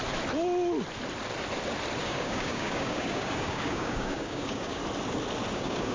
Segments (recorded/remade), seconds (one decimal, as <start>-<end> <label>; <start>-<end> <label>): 0.0-2.0 recorded; 2.0-4.8 remade; 4.8-5.5 recorded; 5.5-5.9 remade